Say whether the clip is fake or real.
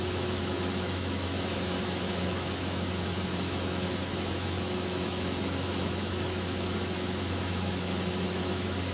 fake